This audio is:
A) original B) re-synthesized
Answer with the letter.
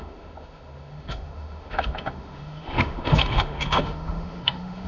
B